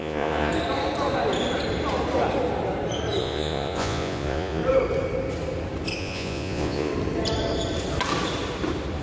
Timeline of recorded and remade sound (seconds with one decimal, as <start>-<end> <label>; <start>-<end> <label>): 0.0-0.5 remade; 0.5-3.2 recorded; 3.2-4.6 remade; 4.6-6.0 recorded; 6.0-6.9 remade; 6.9-9.0 recorded